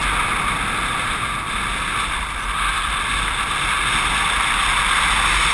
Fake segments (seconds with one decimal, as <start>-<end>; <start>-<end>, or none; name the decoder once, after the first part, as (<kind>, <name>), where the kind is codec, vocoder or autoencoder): none

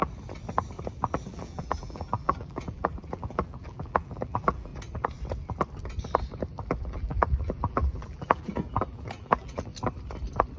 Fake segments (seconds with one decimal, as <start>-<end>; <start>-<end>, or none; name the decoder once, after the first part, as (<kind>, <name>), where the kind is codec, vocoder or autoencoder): 1.3-4.7 (vocoder, BigVGAN v2); 6.8-9.7

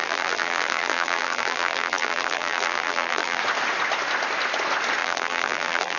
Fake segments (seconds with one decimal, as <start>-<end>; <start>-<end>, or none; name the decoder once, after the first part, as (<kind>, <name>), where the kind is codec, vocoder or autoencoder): 0.0-3.4 (vocoder, BigVGAN v2); 5.0-6.0

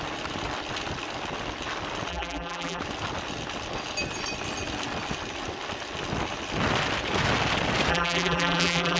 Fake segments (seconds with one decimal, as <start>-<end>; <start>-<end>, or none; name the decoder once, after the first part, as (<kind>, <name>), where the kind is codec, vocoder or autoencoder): 2.1-2.8 (vocoder, BigVGAN v2); 7.9-9.0

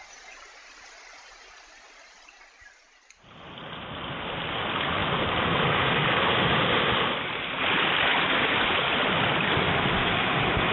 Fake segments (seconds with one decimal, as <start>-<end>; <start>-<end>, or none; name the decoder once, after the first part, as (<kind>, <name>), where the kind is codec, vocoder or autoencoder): 8.1-8.8 (vocoder, BigVGAN v2)

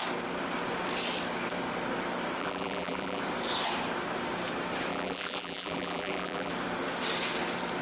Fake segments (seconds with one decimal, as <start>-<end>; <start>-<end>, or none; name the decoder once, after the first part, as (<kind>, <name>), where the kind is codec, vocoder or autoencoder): 2.4-3.2 (vocoder, BigVGAN v2); 4.9-6.5